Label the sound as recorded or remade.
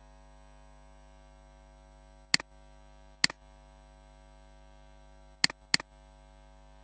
recorded